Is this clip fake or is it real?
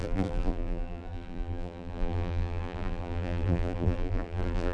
fake